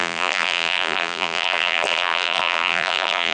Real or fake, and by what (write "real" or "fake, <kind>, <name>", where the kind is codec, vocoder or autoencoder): fake, vocoder, BigVGAN v2